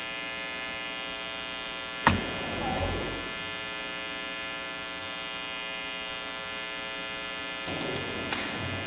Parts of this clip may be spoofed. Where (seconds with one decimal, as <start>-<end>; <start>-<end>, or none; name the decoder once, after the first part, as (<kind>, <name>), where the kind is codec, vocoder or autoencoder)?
none